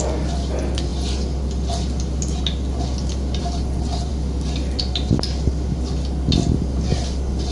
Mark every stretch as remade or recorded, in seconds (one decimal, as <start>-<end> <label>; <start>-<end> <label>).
0.0-7.5 recorded